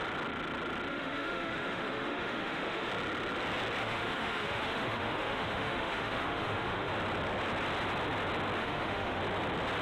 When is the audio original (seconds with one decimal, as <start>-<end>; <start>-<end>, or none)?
0.0-0.9; 2.9-3.8; 6.9-8.6; 9.2-9.8